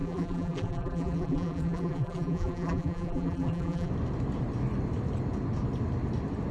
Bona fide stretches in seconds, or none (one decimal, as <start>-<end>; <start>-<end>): 3.9-6.5